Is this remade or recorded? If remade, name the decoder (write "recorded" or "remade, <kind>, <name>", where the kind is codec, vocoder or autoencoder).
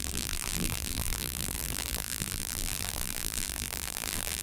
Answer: remade, vocoder, BigVGAN v2